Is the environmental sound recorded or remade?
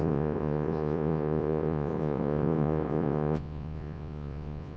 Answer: remade